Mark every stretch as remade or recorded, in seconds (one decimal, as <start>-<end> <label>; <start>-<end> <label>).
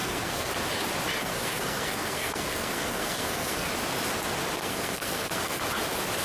0.0-0.5 remade; 0.5-1.2 recorded; 1.2-3.7 remade; 3.7-4.6 recorded; 4.6-5.6 remade; 5.6-6.2 recorded